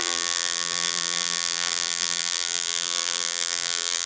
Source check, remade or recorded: remade